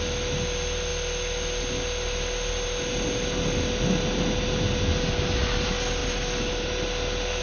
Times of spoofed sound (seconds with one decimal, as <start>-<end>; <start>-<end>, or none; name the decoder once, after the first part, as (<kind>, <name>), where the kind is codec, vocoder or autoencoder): none